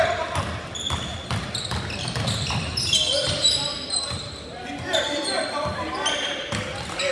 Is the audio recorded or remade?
recorded